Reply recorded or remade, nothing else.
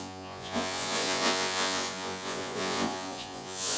remade